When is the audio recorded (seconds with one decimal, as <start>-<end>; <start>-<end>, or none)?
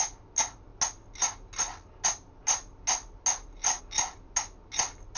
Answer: 0.0-5.2